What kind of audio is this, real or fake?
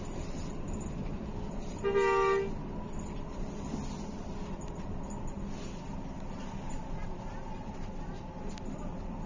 real